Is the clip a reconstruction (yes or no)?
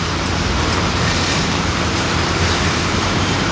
yes